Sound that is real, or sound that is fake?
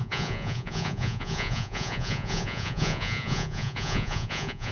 fake